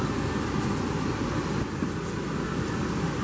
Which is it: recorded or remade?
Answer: recorded